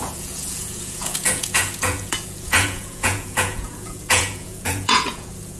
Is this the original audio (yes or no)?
no